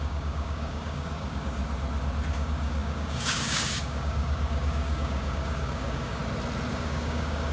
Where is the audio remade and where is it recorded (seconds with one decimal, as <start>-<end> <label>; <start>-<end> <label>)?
0.0-1.6 remade; 1.6-2.3 recorded; 2.3-6.2 remade; 6.2-6.7 recorded; 6.7-7.5 remade